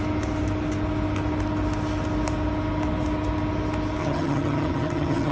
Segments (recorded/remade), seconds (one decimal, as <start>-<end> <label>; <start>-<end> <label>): 0.0-4.0 recorded; 4.0-5.3 remade